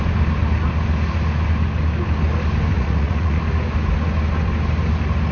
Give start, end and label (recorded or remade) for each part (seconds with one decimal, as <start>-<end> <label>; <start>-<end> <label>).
0.0-2.7 recorded; 2.7-3.4 remade; 3.4-5.3 recorded